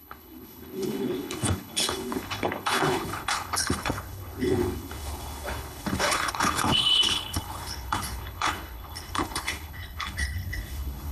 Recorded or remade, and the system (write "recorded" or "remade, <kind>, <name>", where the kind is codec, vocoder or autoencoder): remade, codec, HILCodec